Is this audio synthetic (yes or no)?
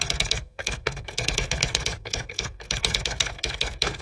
yes